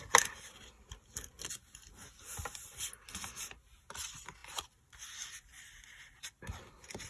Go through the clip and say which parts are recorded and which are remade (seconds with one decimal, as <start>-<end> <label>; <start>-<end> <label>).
0.0-7.1 recorded

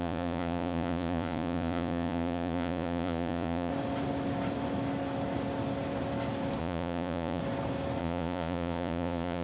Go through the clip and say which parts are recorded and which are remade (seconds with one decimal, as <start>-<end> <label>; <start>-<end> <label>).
0.0-3.7 remade; 3.7-6.6 recorded; 6.6-7.4 remade; 7.4-8.0 recorded; 8.0-9.4 remade

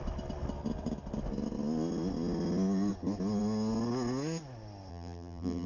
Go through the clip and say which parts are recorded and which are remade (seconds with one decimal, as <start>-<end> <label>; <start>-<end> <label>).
0.0-4.9 recorded; 4.9-5.7 remade

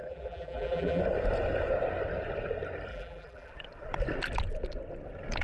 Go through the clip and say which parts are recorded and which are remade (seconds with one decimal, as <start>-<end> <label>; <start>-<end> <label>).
0.0-1.0 remade; 1.0-2.9 recorded; 2.9-3.5 remade; 3.5-5.4 recorded

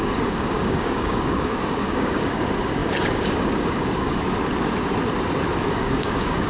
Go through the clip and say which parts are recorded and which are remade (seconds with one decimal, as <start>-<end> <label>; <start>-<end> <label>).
0.0-4.2 remade; 4.2-5.7 recorded; 5.7-6.5 remade

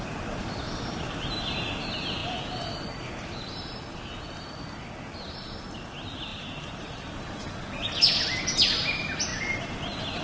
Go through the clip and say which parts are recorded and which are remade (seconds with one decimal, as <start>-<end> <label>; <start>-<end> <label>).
0.0-6.3 recorded; 6.3-7.1 remade; 7.1-10.2 recorded